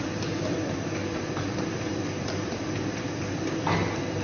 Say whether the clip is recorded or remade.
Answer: remade